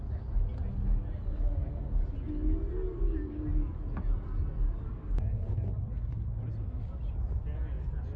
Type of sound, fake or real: real